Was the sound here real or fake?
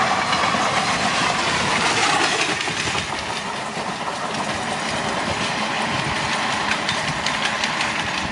fake